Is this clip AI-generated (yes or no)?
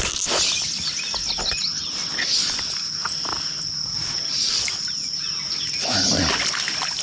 no